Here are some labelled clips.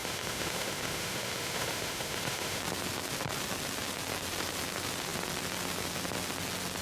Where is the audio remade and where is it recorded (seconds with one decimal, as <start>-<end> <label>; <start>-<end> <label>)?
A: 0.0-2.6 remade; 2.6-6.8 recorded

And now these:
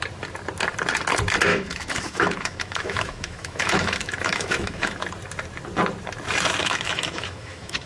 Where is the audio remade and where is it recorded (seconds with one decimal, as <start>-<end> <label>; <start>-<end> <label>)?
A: 0.0-1.5 recorded; 1.5-5.0 remade; 5.0-6.6 recorded; 6.6-7.9 remade

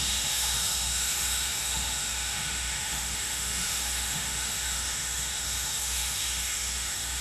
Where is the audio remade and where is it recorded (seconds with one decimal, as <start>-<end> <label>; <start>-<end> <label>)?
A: 0.0-7.2 remade